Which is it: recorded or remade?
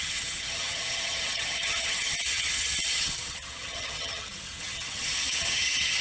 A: remade